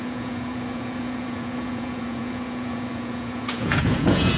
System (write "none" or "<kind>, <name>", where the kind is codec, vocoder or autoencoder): vocoder, Vocos